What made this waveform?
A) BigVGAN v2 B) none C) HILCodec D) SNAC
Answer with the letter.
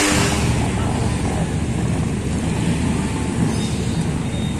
B